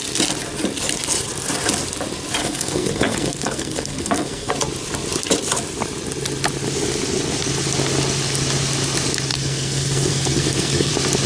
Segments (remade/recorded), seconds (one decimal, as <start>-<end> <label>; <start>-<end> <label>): 0.0-2.4 recorded; 2.4-4.5 remade; 4.5-9.3 recorded; 9.3-10.9 remade; 10.9-11.3 recorded